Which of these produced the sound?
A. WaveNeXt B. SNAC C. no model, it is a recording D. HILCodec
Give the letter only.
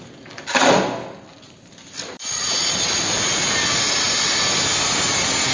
C